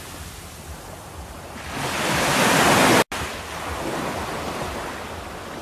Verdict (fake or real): real